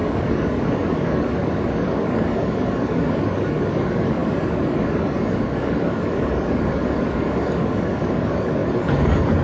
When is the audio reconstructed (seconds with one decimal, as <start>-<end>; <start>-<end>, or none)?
0.0-9.4